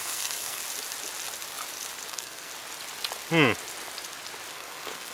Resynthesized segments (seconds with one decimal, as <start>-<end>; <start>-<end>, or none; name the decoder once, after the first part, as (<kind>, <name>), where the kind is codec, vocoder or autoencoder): 0.0-0.6 (codec, SNAC); 2.1-2.5; 4.5-5.1